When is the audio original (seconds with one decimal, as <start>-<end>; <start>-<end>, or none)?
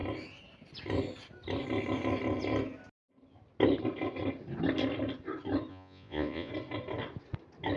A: 0.0-5.7; 6.5-7.8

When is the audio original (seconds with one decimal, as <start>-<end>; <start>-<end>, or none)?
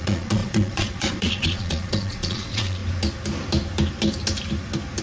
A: 2.8-5.0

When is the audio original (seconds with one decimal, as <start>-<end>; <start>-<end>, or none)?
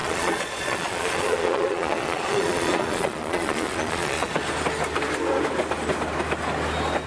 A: 4.3-7.1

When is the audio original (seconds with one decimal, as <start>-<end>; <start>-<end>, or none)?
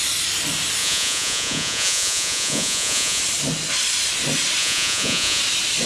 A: 0.0-0.8; 3.2-4.6; 5.4-5.9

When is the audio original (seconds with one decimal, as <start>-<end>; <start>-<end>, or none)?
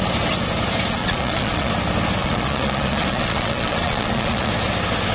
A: 0.0-1.0; 1.7-2.2; 4.5-5.1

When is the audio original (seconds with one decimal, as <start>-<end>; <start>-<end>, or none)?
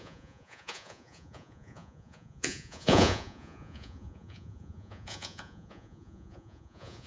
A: none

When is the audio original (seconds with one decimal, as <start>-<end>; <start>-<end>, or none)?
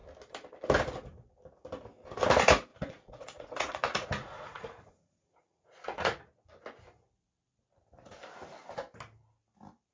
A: 0.0-2.7; 6.2-9.9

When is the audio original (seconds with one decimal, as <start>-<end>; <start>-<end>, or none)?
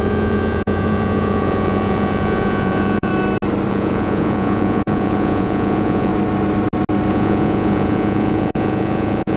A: 3.1-3.7; 6.1-7.1